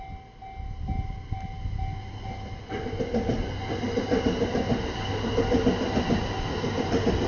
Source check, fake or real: real